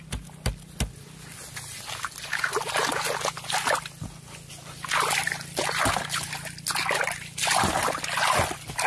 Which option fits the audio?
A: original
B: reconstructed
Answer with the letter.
A